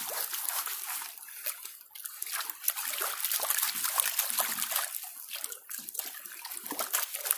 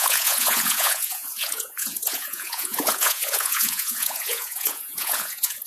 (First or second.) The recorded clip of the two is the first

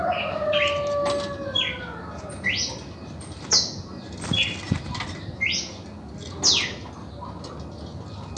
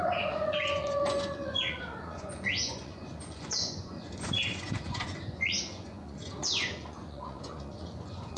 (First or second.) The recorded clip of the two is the first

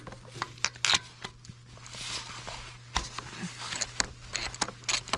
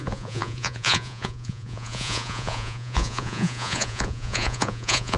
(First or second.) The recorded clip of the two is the first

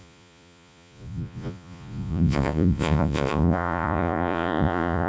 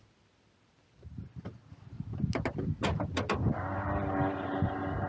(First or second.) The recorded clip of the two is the second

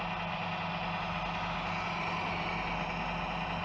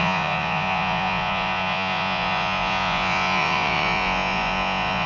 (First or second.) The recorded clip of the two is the first